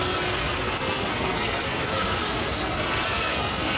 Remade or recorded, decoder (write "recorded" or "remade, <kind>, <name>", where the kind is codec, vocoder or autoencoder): remade, codec, SNAC